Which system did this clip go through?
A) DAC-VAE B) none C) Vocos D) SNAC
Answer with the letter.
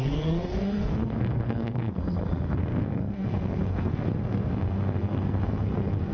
D